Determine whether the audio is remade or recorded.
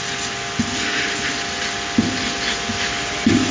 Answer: recorded